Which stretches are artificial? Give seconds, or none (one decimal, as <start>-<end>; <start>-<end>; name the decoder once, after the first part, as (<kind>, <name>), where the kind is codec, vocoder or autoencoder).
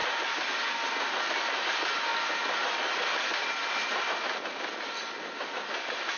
0.0-0.9 (vocoder, BigVGAN v2)